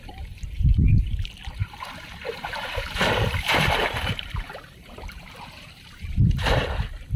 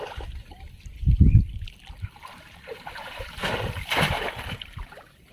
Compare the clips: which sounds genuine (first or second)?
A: second